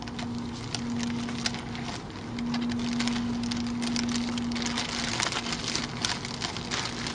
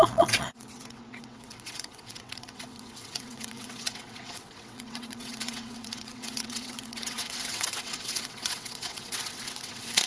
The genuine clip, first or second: first